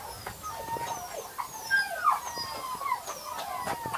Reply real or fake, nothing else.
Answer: real